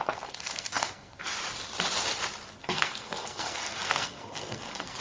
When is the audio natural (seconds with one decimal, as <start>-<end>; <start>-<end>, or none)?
1.3-2.6